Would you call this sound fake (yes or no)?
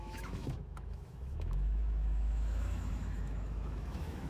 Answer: yes